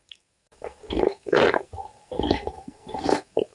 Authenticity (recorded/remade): remade